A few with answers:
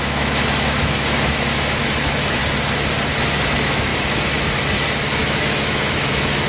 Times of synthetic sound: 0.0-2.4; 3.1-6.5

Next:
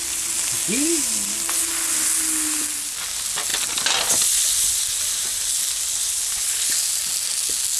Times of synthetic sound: 6.0-6.7

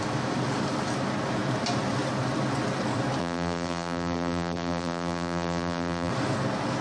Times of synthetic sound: 3.2-6.1

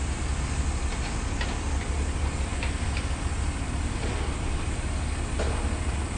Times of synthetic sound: none

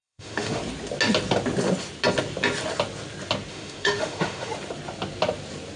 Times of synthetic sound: 0.0-0.6; 3.5-4.5

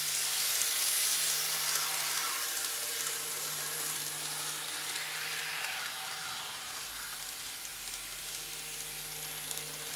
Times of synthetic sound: 2.6-4.0; 5.3-6.8